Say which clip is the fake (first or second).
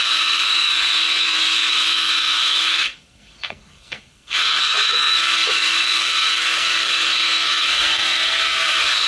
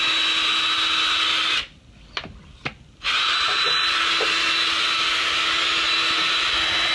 first